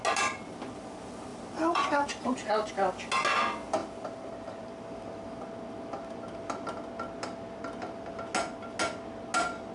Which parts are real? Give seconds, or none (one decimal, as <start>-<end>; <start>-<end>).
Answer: 0.0-1.3; 2.7-3.8; 4.8-9.7